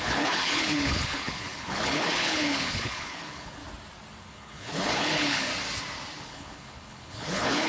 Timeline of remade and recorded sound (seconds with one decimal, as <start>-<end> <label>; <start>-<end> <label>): 0.0-3.6 remade; 3.6-4.2 recorded; 4.2-5.5 remade; 5.5-6.2 recorded; 6.2-7.7 remade